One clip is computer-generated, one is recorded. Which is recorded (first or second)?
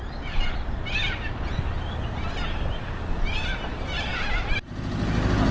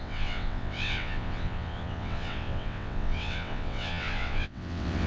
first